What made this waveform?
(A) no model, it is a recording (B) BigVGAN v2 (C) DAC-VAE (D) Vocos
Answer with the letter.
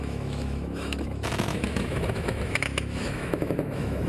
C